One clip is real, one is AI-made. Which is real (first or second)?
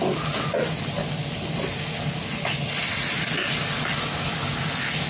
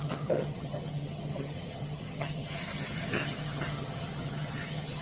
first